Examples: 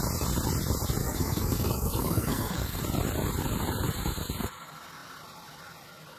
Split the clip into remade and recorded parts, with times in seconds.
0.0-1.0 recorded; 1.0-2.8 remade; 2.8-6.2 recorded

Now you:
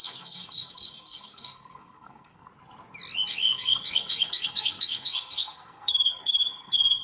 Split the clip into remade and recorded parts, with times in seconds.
0.0-2.5 remade; 2.5-3.3 recorded; 3.3-7.0 remade